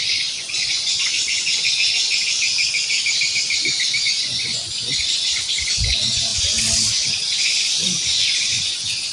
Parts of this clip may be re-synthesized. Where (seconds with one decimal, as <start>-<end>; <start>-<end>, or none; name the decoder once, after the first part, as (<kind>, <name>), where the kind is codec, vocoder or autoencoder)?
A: 0.0-1.8 (vocoder, Vocos); 4.0-6.3; 6.9-9.1